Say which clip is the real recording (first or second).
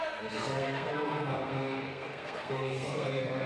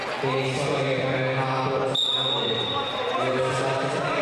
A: second